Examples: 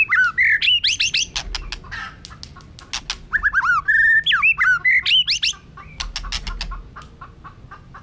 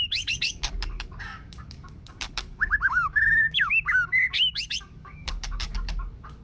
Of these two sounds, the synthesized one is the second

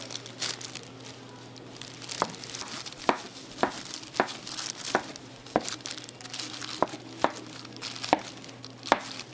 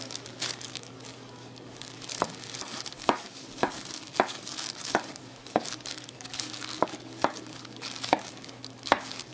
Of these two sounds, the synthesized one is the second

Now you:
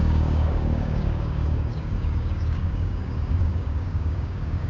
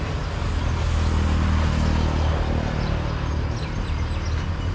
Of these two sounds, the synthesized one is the first